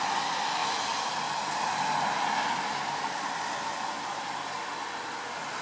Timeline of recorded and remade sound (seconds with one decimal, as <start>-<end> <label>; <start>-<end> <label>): 0.0-5.6 recorded